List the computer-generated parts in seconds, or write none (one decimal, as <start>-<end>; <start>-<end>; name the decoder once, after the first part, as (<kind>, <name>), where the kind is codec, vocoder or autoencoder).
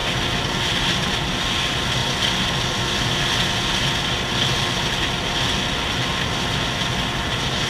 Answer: none